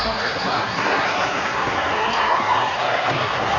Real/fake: fake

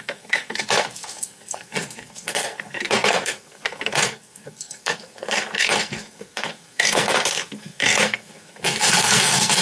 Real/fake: fake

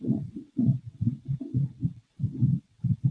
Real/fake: fake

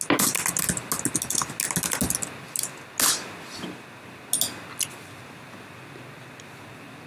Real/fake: real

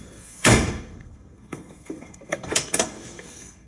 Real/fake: fake